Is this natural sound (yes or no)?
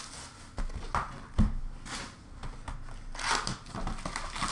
yes